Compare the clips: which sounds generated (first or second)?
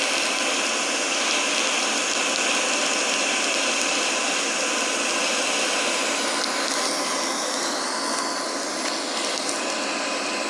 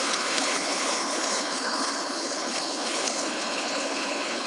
second